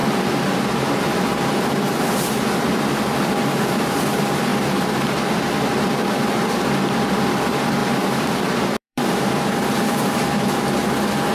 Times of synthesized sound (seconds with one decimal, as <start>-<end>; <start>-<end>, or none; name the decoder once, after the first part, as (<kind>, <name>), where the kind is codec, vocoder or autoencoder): 7.8-10.2 (vocoder, BigVGAN v2)

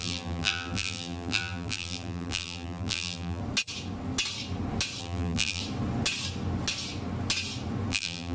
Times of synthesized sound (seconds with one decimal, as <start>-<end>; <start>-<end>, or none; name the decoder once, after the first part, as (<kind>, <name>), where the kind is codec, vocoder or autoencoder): 0.0-3.4 (vocoder, BigVGAN v2); 5.0-5.6; 7.9-8.3

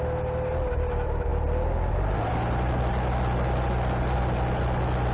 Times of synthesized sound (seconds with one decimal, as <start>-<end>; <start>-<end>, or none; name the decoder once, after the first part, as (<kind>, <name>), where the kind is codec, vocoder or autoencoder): none

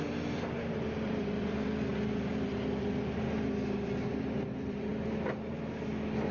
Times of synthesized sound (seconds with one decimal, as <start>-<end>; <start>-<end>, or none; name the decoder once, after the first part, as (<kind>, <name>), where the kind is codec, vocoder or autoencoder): 0.0-1.9 (vocoder, BigVGAN v2); 4.1-4.9

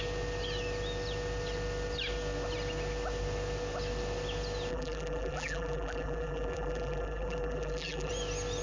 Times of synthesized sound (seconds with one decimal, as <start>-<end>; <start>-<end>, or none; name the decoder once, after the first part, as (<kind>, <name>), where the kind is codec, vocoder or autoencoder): 4.7-8.1 (vocoder, BigVGAN v2)

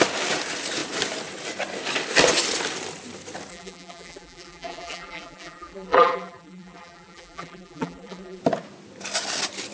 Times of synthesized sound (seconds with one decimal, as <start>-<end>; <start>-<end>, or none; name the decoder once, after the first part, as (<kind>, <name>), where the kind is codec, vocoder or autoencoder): 3.5-8.4 (vocoder, BigVGAN v2)

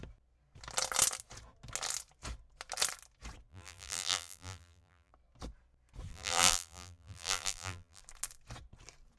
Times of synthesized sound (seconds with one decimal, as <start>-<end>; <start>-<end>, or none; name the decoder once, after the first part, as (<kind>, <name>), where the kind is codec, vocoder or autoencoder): 3.5-5.1 (vocoder, BigVGAN v2); 6.1-8.0